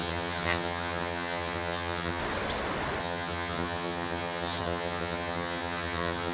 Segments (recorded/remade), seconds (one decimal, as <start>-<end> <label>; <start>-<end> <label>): 0.0-2.2 remade; 2.2-3.0 recorded; 3.0-6.3 remade